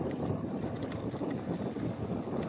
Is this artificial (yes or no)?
no